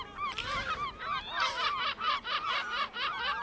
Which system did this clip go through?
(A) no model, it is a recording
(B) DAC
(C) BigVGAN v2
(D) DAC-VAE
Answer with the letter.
A